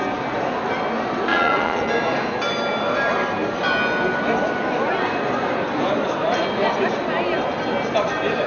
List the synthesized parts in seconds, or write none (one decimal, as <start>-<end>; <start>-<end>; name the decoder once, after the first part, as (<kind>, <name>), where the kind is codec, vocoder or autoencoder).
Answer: 1.3-1.9 (vocoder, Vocos)